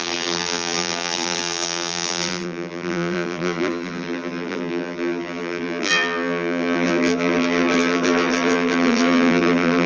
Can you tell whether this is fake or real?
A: fake